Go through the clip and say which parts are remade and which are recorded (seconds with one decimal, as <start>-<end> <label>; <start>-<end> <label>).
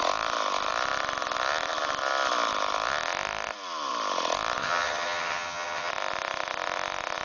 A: 0.0-4.6 recorded; 4.6-5.9 remade; 5.9-7.2 recorded